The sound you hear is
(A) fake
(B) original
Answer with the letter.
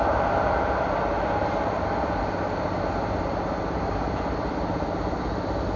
B